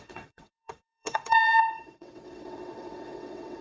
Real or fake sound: fake